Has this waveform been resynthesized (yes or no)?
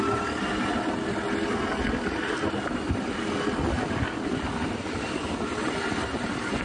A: no